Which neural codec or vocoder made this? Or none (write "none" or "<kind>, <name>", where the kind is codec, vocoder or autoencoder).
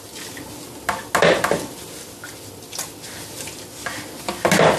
none